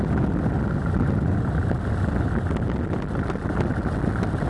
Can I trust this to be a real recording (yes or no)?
yes